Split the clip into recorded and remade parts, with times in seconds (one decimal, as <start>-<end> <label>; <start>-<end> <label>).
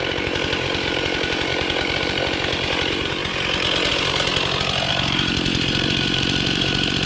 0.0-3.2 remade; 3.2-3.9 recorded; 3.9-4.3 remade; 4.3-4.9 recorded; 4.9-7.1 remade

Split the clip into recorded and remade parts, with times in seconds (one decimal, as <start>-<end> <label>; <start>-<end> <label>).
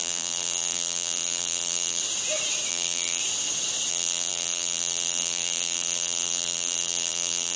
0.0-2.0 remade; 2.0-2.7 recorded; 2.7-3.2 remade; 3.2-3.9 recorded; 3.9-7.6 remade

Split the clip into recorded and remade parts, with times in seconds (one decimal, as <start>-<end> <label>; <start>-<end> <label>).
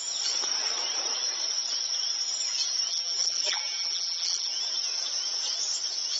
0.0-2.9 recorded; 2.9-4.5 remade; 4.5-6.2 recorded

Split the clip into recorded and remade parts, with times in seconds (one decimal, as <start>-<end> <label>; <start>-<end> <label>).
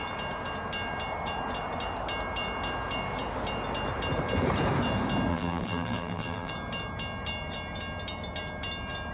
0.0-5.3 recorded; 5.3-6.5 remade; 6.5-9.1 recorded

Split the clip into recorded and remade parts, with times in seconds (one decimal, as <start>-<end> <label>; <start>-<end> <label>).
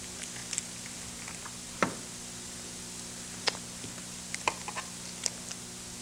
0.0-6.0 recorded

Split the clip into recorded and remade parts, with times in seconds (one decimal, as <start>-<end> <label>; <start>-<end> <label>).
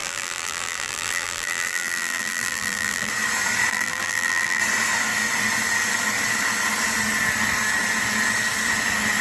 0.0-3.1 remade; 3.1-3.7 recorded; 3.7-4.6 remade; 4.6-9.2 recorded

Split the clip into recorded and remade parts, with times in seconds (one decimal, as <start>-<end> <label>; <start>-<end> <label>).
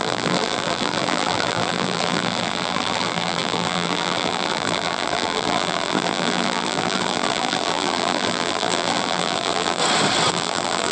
0.0-9.8 remade; 9.8-10.3 recorded; 10.3-10.9 remade